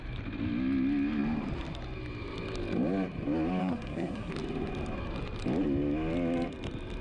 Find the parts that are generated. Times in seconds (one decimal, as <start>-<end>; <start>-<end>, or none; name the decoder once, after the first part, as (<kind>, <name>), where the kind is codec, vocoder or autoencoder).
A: 3.6-4.3 (codec, SNAC)